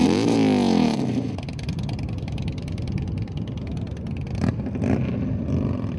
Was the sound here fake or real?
real